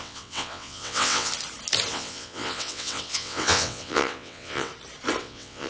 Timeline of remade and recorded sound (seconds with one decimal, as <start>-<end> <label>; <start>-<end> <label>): 0.0-1.3 remade; 1.3-1.9 recorded; 1.9-4.7 remade; 4.7-5.2 recorded; 5.2-5.7 remade